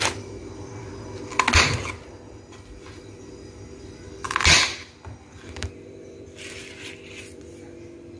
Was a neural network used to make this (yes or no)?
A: no